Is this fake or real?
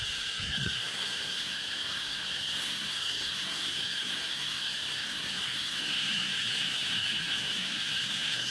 fake